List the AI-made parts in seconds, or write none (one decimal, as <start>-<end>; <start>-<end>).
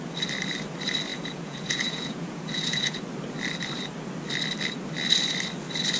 1.1-3.0